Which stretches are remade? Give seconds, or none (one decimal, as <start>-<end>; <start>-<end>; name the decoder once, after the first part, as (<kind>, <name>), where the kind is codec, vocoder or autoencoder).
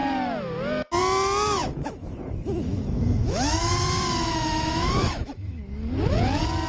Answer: 1.6-5.6 (autoencoder, DAC-VAE)